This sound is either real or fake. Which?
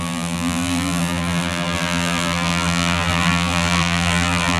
fake